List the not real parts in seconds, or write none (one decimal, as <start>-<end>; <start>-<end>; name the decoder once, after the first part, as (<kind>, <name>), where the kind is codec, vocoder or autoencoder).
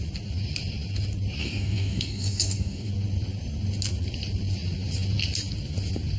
1.4-2.9 (codec, DAC)